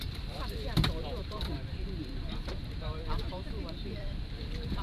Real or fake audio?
fake